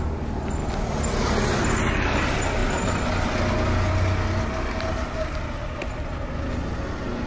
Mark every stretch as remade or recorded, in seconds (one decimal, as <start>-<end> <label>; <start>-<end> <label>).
0.0-7.3 recorded

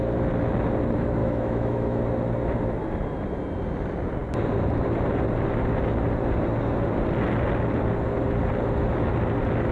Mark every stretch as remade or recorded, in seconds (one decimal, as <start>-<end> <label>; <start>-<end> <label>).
0.0-1.2 recorded; 1.2-2.0 remade; 2.0-9.7 recorded

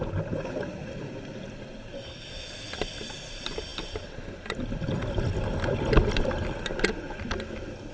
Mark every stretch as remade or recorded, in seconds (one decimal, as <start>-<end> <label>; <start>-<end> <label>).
0.0-7.9 recorded

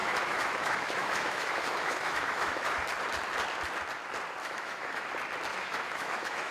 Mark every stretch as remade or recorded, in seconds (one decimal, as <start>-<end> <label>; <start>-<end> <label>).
0.0-2.7 remade; 2.7-4.4 recorded; 4.4-5.1 remade; 5.1-5.5 recorded; 5.5-6.5 remade

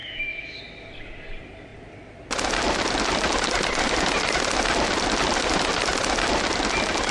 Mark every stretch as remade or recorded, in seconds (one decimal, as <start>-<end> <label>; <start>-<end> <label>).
0.0-0.6 remade; 0.6-7.1 recorded